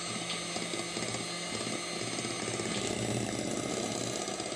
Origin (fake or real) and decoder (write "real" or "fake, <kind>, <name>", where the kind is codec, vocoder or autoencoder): real